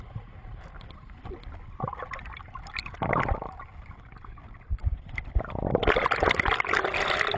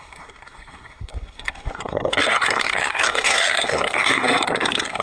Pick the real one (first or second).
first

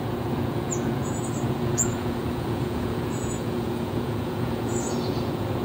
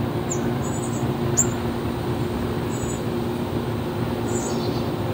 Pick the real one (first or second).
second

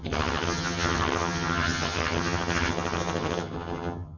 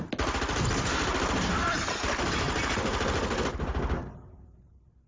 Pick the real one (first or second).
second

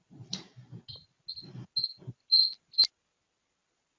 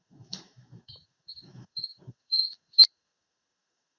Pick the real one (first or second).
first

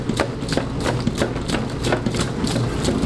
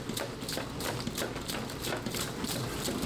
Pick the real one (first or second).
first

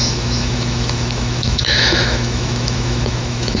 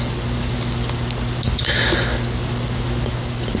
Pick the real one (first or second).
second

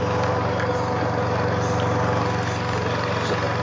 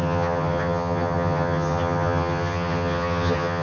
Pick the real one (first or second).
first